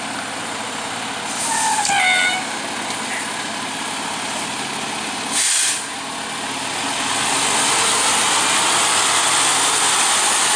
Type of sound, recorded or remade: recorded